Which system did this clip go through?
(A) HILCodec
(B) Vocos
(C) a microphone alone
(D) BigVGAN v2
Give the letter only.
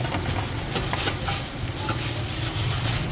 C